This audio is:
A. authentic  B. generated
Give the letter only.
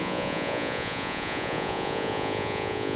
B